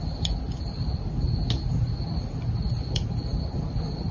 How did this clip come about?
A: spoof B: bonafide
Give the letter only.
B